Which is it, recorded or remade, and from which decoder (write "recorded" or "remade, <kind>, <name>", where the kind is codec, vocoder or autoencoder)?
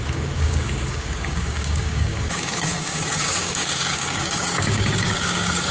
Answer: remade, codec, DAC